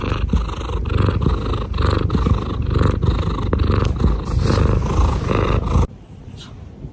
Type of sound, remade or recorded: recorded